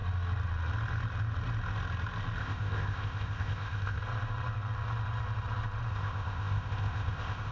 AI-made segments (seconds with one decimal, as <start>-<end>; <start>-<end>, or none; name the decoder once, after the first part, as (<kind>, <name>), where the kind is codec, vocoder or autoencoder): 2.4-4.0 (codec, ZipCodec); 5.9-7.5